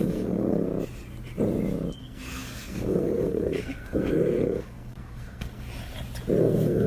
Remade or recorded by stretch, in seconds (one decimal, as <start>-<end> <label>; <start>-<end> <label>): 0.0-0.7 remade; 0.7-2.0 recorded; 2.0-5.7 remade; 5.7-6.4 recorded; 6.4-6.9 remade